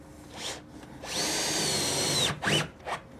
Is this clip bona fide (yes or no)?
yes